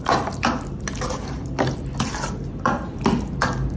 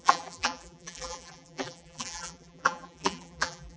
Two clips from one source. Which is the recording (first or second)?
first